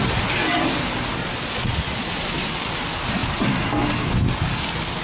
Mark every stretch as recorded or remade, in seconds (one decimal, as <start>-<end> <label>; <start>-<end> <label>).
0.0-1.2 recorded; 1.2-2.4 remade; 2.4-5.0 recorded